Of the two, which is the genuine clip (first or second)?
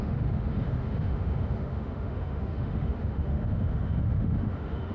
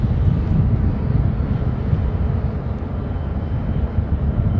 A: second